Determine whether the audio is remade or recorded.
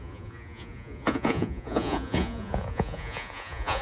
remade